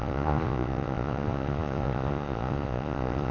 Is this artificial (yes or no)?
yes